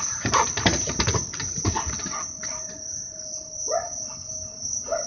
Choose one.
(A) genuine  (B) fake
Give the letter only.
B